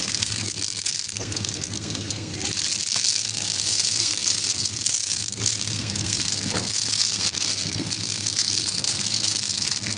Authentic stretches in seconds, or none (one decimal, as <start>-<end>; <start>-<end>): 2.3-2.9